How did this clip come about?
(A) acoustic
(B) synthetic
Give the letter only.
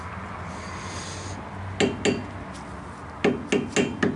A